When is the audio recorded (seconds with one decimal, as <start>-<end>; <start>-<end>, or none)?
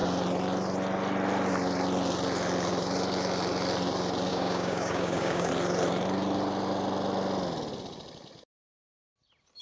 0.0-4.3; 5.5-9.6